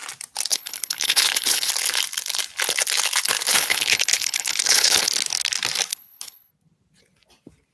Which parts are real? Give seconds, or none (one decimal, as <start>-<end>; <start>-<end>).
0.0-0.5; 1.7-3.5; 5.1-5.9; 6.5-7.7